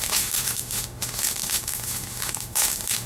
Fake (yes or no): yes